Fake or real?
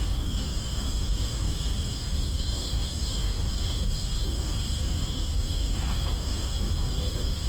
fake